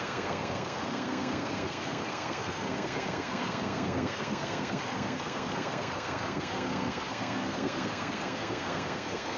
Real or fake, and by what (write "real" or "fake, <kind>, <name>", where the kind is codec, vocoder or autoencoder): fake, codec, SNAC